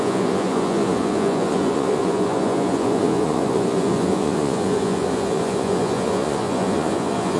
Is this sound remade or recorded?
remade